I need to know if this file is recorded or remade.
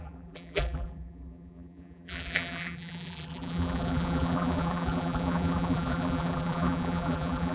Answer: remade